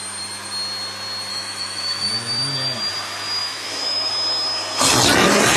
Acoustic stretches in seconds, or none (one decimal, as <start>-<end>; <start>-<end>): 0.0-1.3; 2.1-3.4; 4.1-5.6